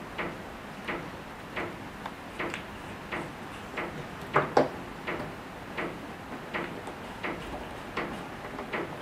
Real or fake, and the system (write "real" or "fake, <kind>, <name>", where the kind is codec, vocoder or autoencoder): real